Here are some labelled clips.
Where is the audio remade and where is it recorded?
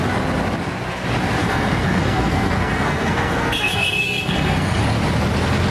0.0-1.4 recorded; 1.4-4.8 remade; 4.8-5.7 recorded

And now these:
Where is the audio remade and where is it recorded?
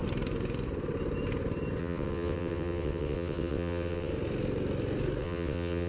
0.0-1.8 recorded; 1.8-4.1 remade; 4.1-5.2 recorded; 5.2-5.9 remade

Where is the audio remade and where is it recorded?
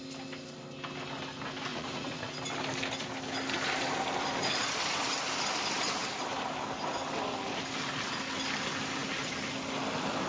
0.0-1.7 recorded; 1.7-2.4 remade; 2.4-10.3 recorded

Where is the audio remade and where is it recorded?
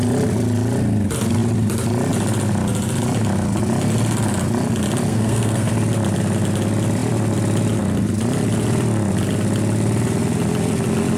0.0-5.1 recorded; 5.1-5.7 remade; 5.7-11.2 recorded